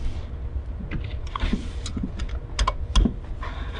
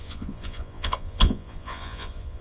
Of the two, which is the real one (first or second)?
first